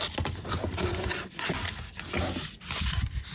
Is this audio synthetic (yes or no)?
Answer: no